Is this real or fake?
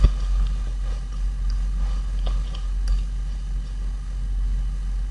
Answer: fake